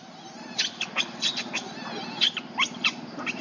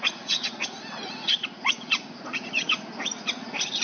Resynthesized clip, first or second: second